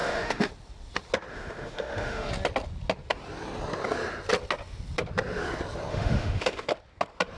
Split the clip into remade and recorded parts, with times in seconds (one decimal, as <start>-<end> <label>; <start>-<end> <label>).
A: 0.0-0.5 remade; 0.5-1.3 recorded; 1.3-2.3 remade; 2.3-5.9 recorded; 5.9-6.7 remade; 6.7-7.4 recorded